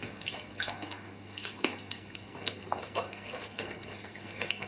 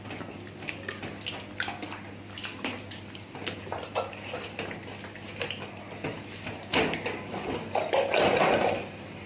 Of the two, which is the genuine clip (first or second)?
second